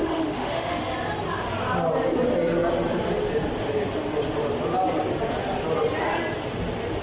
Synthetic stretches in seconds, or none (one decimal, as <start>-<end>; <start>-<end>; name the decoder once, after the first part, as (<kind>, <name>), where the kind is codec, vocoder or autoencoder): 0.0-0.8 (autoencoder, DAC-VAE)